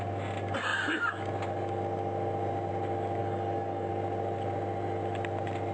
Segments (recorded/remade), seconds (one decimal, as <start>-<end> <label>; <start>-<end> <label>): 0.0-3.2 recorded; 3.2-3.9 remade; 3.9-5.7 recorded